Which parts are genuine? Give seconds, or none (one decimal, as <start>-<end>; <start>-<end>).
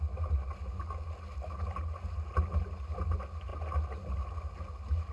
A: 0.0-5.1